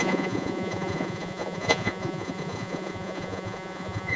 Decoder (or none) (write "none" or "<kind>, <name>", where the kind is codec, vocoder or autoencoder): vocoder, Vocos